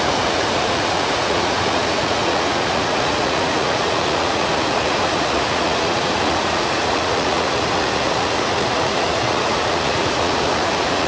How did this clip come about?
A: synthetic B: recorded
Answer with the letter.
A